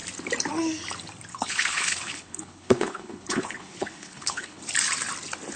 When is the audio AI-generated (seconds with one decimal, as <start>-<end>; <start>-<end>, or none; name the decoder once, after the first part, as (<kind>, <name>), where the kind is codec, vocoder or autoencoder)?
1.3-4.7 (codec, HILCodec)